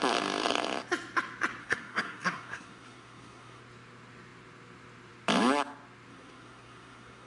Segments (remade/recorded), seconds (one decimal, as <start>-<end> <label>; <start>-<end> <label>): 0.0-1.6 recorded; 1.6-3.6 remade; 3.6-6.1 recorded; 6.1-7.3 remade